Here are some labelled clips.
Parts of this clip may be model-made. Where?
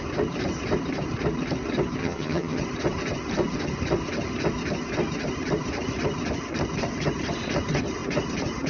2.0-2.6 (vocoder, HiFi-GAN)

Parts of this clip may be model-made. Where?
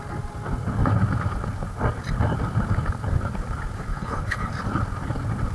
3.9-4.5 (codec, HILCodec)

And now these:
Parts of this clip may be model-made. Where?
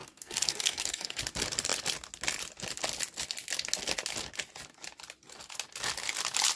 0.0-1.2 (codec, SNAC)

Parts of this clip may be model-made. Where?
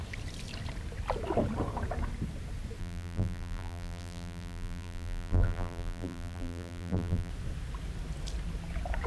2.8-7.3 (vocoder, BigVGAN v2)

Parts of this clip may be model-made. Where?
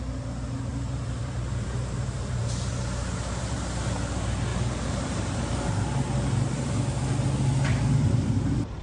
0.7-2.7 (vocoder, BigVGAN v2); 4.5-6.7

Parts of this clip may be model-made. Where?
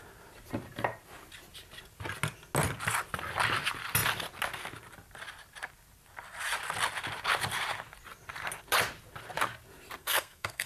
10.0-10.7 (codec, SNAC)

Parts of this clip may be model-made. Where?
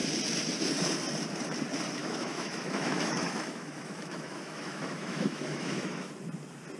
2.0-6.1 (autoencoder, DAC-VAE)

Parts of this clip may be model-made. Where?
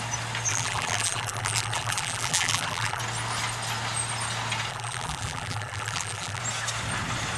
0.5-3.0 (vocoder, BigVGAN v2); 4.7-6.4